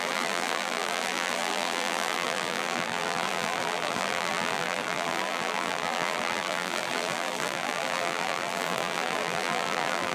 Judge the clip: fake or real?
fake